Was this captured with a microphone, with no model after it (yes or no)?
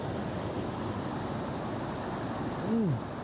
yes